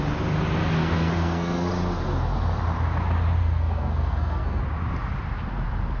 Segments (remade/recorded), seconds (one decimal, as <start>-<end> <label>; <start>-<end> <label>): 0.0-0.8 recorded; 0.8-1.7 remade; 1.7-3.4 recorded; 3.4-4.6 remade; 4.6-6.0 recorded